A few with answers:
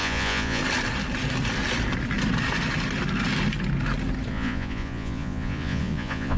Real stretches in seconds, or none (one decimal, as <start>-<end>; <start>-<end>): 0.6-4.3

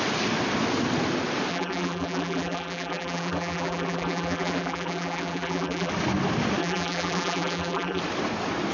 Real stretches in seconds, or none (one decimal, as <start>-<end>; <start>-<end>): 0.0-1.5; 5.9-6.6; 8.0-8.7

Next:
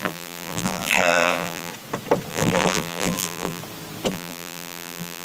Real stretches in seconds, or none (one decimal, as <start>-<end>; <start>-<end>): 1.7-2.3; 3.6-4.1

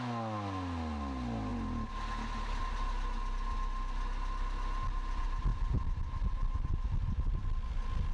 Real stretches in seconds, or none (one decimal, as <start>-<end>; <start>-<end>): 0.0-8.1

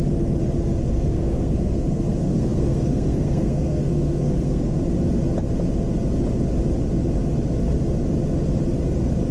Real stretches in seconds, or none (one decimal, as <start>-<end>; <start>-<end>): 0.0-0.8; 4.8-9.3

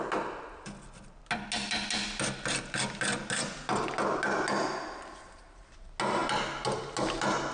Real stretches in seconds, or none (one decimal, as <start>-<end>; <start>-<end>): 0.0-7.5

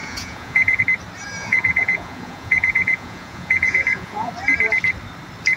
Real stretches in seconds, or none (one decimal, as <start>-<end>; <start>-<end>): 0.8-1.4; 4.3-5.6